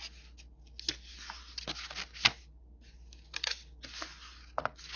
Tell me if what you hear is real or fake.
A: real